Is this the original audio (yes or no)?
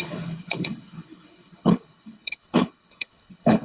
no